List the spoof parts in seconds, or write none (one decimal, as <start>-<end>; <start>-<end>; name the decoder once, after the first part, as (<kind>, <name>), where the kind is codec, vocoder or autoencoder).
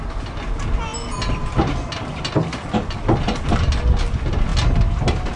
none